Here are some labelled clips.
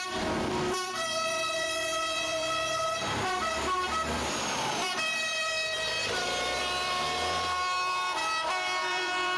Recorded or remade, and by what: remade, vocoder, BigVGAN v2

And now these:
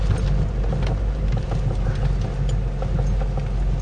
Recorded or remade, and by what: recorded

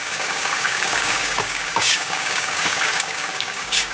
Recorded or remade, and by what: remade, codec, DAC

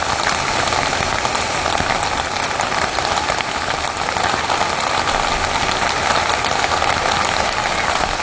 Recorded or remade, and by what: recorded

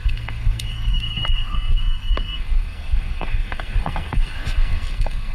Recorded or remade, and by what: remade, codec, SNAC